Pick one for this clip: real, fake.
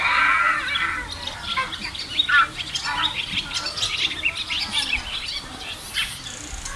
real